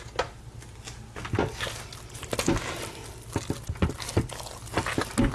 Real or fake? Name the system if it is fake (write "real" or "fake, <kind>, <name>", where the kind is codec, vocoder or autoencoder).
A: real